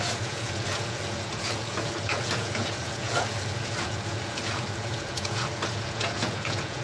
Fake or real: fake